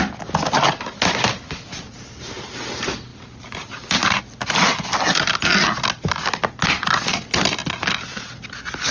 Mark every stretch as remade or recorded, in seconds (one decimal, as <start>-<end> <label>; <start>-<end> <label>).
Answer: 0.0-3.1 recorded; 3.1-4.2 remade; 4.2-8.9 recorded